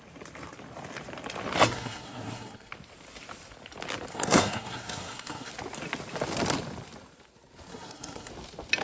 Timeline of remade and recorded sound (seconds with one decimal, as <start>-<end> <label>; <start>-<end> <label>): 0.0-1.6 recorded; 1.6-2.7 remade; 2.7-4.1 recorded; 4.1-5.5 remade; 5.5-7.7 recorded; 7.7-8.3 remade; 8.3-8.8 recorded